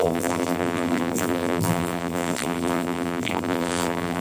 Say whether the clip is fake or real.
fake